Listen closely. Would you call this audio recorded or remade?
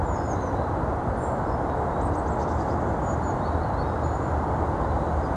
recorded